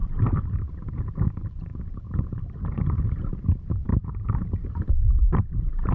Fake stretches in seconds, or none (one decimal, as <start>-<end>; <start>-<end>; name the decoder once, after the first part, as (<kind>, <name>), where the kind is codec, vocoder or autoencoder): 0.0-5.9 (vocoder, BigVGAN v2)

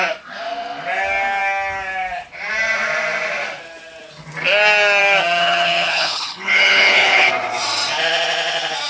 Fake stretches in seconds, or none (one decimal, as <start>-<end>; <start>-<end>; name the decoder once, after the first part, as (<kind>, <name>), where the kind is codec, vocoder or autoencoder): 5.4-7.3 (codec, HILCodec)